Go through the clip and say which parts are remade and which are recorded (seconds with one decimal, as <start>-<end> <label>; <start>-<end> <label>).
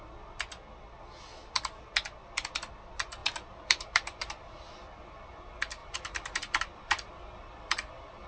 0.0-3.2 recorded; 3.2-4.7 remade; 4.7-5.8 recorded; 5.8-7.1 remade; 7.1-8.3 recorded